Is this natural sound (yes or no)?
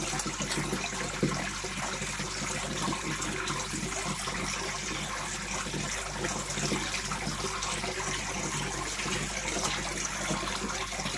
yes